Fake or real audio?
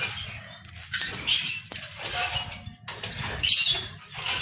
real